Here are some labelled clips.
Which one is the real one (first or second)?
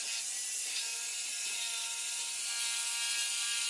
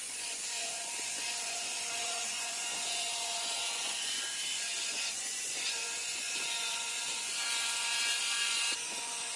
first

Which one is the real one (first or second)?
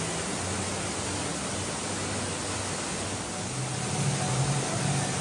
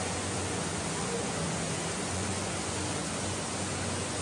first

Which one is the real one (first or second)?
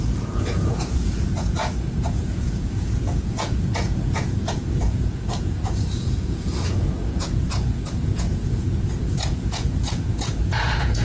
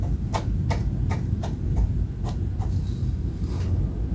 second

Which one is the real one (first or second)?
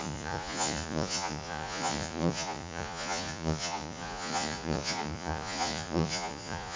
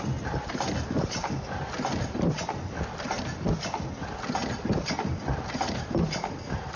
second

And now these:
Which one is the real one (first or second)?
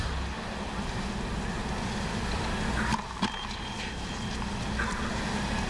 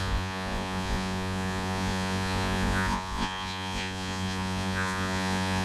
first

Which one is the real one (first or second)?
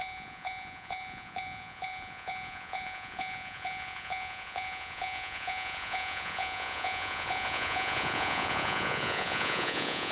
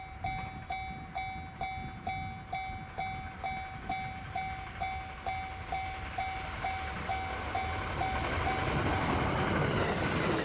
second